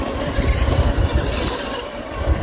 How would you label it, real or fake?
real